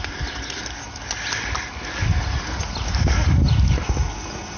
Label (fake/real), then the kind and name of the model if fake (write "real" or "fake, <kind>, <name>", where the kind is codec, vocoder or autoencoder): real